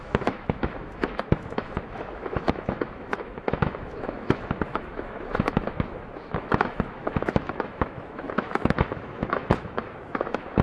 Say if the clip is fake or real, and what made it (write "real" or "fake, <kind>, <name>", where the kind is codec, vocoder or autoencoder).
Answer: fake, autoencoder, DAC-VAE